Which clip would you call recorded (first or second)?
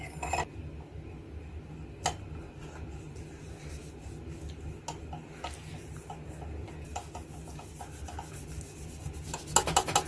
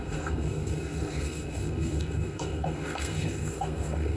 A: first